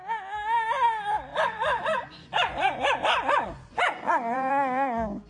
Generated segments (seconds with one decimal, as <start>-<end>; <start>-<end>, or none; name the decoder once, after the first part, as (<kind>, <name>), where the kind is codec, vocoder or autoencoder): 1.3-4.5 (vocoder, Vocos)